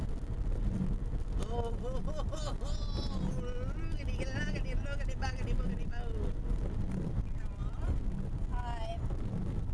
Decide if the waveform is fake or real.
real